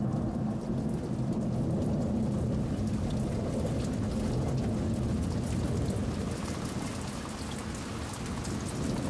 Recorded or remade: recorded